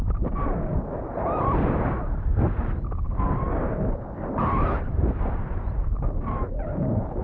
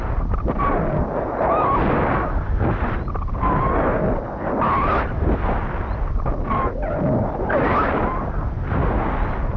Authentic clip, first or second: second